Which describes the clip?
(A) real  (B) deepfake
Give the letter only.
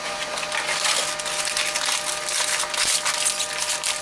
A